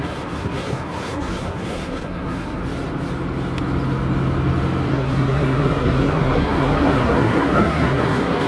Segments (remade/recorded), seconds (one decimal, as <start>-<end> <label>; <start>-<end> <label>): 0.0-2.6 remade; 2.6-4.9 recorded; 4.9-8.5 remade